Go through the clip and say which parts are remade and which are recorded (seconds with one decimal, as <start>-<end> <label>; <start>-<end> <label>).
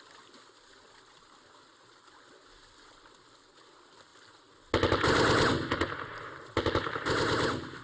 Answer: 0.0-7.8 recorded